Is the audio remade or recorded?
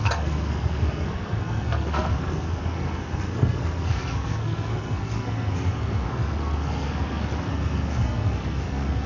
remade